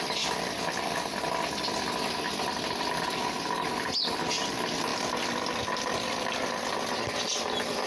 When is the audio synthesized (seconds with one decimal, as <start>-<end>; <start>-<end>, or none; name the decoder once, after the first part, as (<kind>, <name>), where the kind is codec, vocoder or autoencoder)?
none